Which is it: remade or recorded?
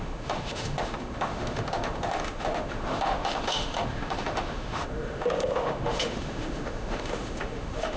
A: remade